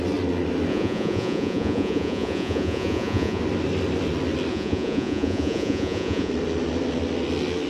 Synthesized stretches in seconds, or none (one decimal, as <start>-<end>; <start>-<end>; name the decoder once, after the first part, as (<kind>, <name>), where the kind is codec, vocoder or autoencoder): 0.7-3.4 (vocoder, Vocos); 4.5-6.3